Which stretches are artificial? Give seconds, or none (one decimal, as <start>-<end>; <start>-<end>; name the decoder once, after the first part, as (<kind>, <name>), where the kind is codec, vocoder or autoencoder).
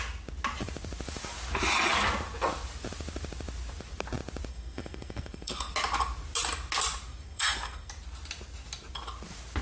4.5-5.7 (codec, SNAC); 7.1-7.9